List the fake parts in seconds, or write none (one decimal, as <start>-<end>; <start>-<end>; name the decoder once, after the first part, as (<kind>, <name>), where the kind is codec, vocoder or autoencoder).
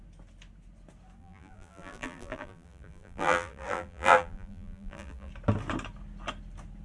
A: 1.2-5.3 (vocoder, BigVGAN v2)